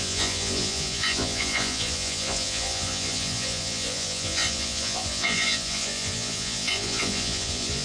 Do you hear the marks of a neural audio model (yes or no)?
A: yes